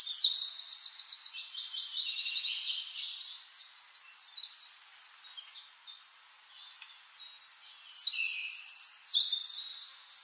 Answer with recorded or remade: recorded